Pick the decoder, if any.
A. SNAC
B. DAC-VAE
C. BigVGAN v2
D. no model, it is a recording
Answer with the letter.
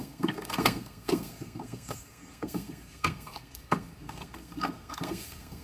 A